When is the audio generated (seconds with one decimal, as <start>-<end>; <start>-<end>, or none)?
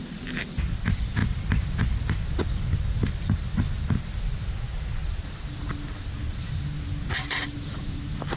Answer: none